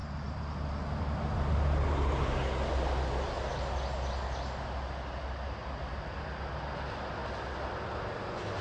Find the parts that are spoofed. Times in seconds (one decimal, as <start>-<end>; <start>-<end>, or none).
none